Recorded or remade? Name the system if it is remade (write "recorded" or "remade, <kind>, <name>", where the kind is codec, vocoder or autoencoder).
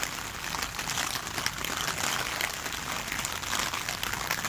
recorded